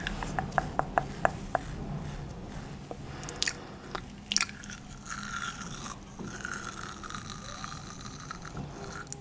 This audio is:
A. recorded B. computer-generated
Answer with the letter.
A